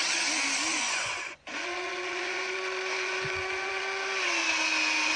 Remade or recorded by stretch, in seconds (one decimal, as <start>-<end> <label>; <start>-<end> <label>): 0.0-0.7 recorded; 0.7-3.8 remade; 3.8-5.2 recorded